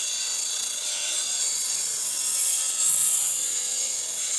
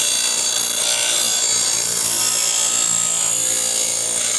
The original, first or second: second